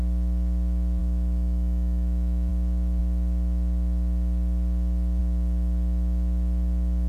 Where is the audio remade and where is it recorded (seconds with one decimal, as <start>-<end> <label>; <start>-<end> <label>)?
0.0-1.0 recorded; 1.0-2.5 remade; 2.5-7.1 recorded